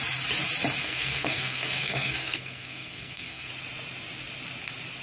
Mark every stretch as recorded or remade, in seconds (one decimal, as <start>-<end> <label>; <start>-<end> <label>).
0.0-0.8 recorded; 0.8-3.5 remade; 3.5-5.0 recorded